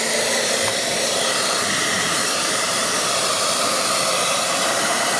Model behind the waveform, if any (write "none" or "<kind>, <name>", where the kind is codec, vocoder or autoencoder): vocoder, BigVGAN v2